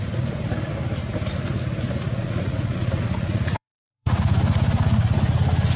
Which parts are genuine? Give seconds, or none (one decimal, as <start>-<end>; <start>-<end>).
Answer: 0.0-2.2; 4.2-5.8